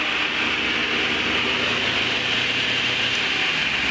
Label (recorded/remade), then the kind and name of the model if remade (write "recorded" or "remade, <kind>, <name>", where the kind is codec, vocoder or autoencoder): recorded